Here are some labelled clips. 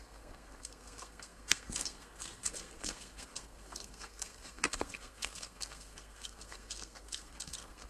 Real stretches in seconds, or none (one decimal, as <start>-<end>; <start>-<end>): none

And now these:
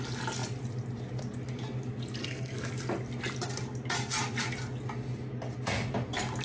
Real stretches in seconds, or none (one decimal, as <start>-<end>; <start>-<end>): 0.0-2.2; 2.7-6.4

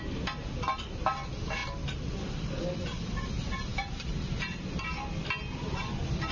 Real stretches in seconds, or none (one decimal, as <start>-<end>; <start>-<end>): 0.0-6.3

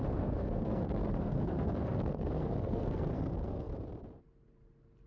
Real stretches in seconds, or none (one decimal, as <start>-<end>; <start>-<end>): 3.7-5.1

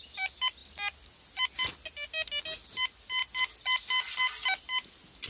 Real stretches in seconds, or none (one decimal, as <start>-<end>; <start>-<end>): 0.0-5.3